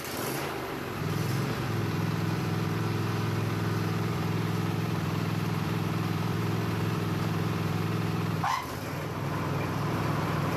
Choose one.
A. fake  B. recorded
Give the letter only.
A